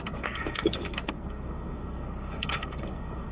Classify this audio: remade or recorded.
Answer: remade